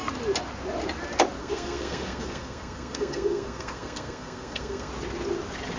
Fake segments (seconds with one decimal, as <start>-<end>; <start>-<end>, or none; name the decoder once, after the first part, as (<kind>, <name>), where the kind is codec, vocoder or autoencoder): 1.4-4.9 (codec, SNAC)